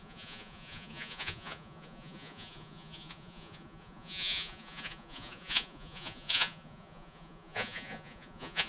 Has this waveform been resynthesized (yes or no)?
yes